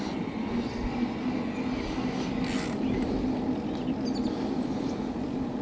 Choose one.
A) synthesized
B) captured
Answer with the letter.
B